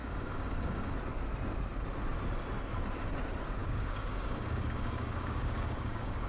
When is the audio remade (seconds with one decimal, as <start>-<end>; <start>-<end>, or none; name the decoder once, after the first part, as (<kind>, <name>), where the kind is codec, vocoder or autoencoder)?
0.0-0.9 (codec, DAC); 3.6-6.3